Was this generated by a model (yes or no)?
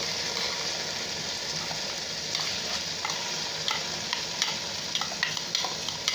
no